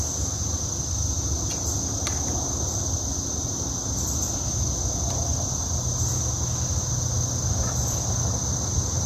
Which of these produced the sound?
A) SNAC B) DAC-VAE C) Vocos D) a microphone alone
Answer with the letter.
D